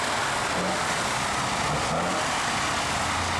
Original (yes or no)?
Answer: yes